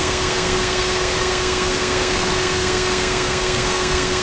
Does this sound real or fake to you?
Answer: fake